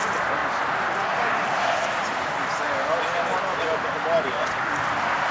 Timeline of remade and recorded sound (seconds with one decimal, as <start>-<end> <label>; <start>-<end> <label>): 0.0-5.3 recorded

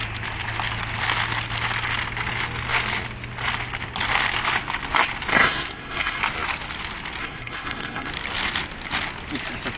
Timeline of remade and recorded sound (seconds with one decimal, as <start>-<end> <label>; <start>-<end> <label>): 0.0-5.3 recorded; 5.3-6.2 remade; 6.2-7.2 recorded; 7.2-8.1 remade; 8.1-9.8 recorded